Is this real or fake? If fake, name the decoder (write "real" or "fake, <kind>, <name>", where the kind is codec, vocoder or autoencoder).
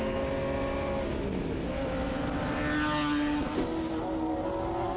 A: real